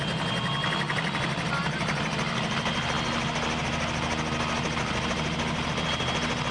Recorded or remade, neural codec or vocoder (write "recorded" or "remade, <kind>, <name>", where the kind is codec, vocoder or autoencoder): recorded